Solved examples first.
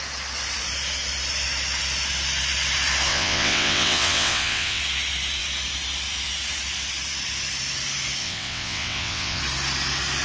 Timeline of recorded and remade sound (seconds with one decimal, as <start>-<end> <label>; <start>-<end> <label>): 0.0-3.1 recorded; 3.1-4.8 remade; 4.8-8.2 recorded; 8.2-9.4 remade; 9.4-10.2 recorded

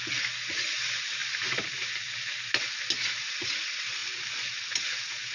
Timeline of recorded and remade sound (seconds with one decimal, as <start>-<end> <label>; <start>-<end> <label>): 0.0-5.3 recorded

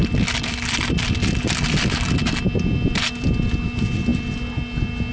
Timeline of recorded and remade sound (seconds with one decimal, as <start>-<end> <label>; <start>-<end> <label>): 0.0-5.1 recorded